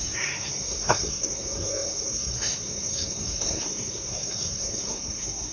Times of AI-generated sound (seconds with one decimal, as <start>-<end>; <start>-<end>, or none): 0.0-5.5